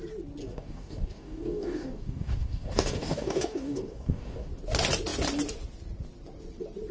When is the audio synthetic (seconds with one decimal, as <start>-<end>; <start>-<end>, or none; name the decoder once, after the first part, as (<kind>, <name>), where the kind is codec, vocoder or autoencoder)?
0.4-4.5 (codec, DAC)